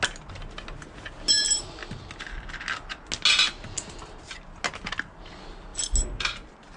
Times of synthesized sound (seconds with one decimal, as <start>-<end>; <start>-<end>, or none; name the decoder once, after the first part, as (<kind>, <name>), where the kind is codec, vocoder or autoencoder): none